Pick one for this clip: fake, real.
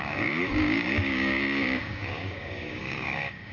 fake